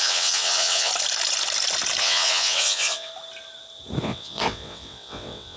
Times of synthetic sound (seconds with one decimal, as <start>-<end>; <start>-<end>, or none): 0.0-0.9; 2.0-3.1; 4.0-5.6